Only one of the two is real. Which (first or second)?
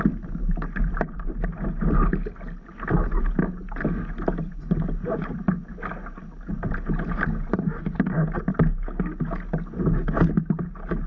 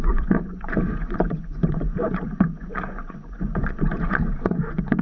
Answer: first